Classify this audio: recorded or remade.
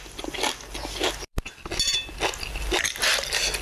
recorded